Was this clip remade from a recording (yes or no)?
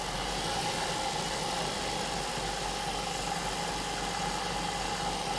no